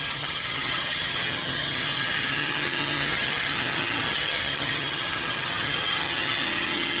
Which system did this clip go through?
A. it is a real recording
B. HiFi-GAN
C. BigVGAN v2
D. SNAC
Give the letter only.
B